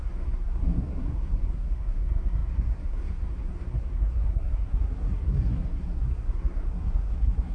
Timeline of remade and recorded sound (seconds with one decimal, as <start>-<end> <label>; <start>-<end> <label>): 0.0-7.5 remade